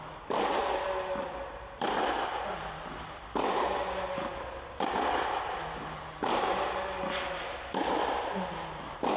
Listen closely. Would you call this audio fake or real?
real